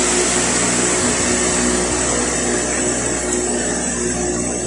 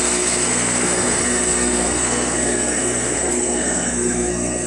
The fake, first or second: second